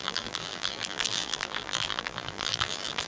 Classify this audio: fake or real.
fake